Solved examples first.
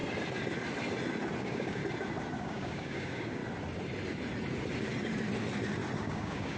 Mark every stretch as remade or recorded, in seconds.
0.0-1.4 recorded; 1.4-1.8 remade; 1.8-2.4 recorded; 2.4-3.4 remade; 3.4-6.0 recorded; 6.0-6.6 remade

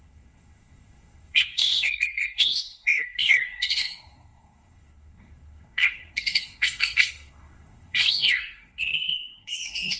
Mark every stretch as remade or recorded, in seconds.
0.0-10.0 remade

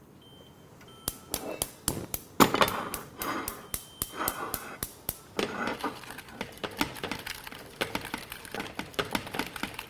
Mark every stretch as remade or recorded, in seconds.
0.0-9.9 recorded

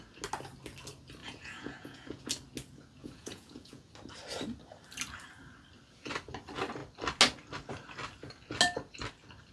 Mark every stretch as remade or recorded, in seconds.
0.0-1.2 recorded; 1.2-2.2 remade; 2.2-3.0 recorded; 3.0-3.9 remade; 3.9-9.5 recorded

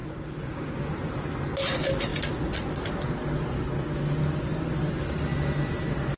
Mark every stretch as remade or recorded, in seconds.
0.0-6.2 recorded

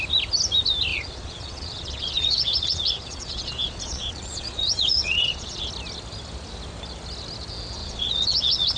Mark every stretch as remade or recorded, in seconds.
0.0-0.9 recorded; 0.9-5.7 remade; 5.7-7.8 recorded; 7.8-8.8 remade

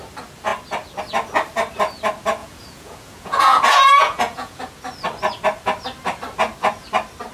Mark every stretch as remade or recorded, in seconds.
0.0-2.4 recorded; 2.4-4.6 remade; 4.6-7.3 recorded

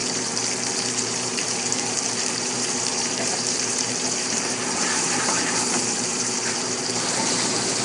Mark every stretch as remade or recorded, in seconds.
0.0-0.9 recorded; 0.9-7.8 remade